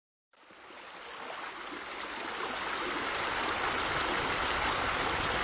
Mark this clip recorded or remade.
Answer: recorded